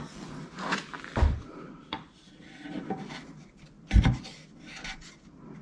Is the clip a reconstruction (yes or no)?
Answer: no